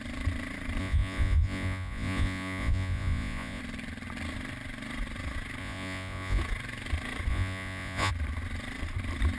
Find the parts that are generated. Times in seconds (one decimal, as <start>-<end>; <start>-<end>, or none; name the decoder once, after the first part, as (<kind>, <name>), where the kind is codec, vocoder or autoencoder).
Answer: 0.8-3.6 (vocoder, Vocos); 5.6-6.4; 7.3-8.1